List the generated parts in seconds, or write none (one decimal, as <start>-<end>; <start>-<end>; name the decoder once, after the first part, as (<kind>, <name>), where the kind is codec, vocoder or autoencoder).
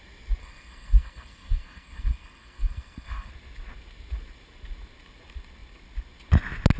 0.4-3.3 (codec, SNAC)